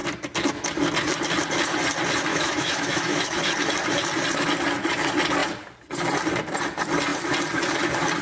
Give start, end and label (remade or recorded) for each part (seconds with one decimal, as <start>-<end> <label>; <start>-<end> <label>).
0.0-2.3 recorded; 2.3-3.4 remade; 3.4-8.2 recorded